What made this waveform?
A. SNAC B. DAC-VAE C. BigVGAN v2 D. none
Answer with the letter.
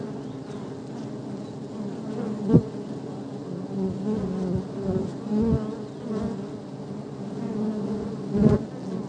D